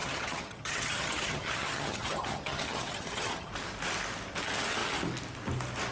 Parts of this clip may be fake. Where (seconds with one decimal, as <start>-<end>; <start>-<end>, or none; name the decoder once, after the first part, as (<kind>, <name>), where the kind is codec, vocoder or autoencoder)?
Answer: 0.0-3.5 (vocoder, HiFi-GAN)